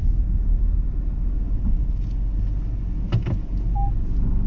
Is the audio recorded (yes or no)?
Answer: yes